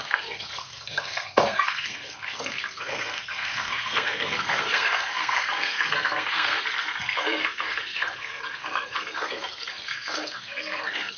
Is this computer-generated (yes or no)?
yes